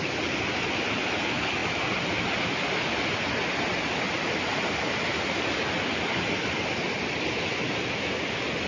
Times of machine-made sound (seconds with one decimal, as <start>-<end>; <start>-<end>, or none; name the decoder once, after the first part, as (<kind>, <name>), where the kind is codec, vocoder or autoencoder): none